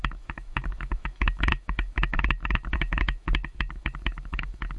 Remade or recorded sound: remade